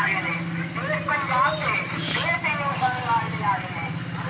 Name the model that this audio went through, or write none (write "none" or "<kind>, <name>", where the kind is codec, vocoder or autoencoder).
none